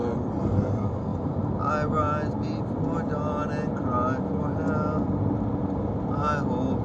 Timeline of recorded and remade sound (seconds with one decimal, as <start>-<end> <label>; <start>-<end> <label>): 0.0-6.8 recorded